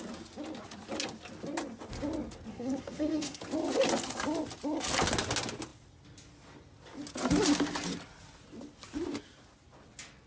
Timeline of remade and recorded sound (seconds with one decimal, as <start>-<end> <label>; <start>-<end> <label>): 0.0-2.5 recorded; 2.5-3.4 remade; 3.4-10.3 recorded